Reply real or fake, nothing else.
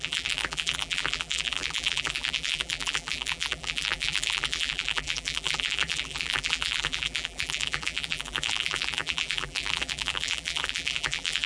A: fake